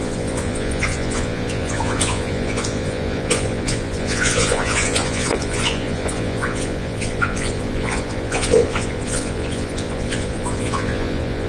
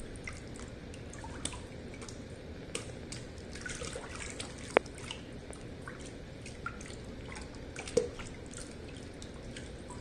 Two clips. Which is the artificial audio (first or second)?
first